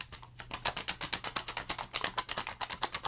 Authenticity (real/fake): real